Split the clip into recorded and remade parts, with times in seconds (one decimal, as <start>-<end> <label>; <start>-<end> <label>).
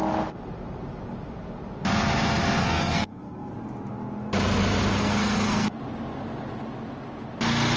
0.0-2.6 recorded; 2.6-3.5 remade; 3.5-4.9 recorded; 4.9-5.8 remade; 5.8-7.8 recorded